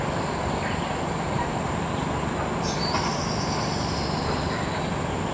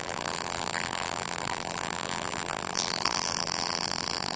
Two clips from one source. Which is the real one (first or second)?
first